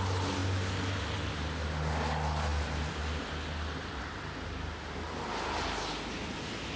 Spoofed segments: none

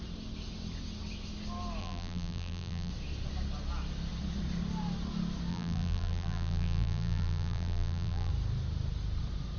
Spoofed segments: 1.8-2.9 (vocoder, BigVGAN v2); 5.5-8.3